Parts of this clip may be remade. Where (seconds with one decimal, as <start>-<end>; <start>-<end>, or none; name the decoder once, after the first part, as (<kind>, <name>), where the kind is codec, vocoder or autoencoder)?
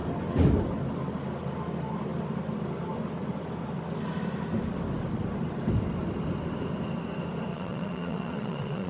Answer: 7.5-8.9 (vocoder, Vocos)